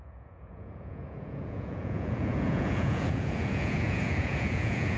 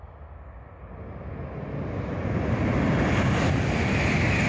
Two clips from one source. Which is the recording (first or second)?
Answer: second